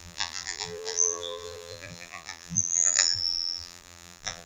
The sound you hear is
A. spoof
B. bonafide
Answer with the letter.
A